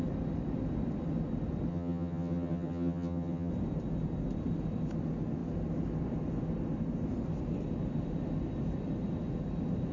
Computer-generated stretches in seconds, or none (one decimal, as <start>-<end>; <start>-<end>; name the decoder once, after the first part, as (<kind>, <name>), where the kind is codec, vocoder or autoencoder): 1.7-3.5 (vocoder, HiFi-GAN)